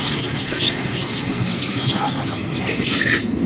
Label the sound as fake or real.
fake